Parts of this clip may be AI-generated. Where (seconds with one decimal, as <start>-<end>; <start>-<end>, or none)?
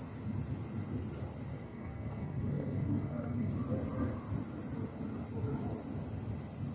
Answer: 1.5-3.5